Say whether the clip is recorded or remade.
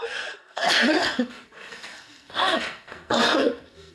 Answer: remade